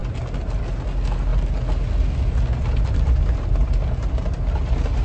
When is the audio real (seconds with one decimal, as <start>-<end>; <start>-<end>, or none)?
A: 0.0-5.0